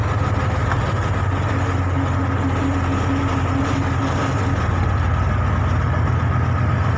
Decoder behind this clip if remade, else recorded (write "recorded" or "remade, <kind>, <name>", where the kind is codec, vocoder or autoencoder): recorded